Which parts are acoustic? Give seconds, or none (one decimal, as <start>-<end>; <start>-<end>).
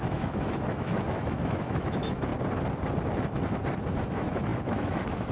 2.3-4.0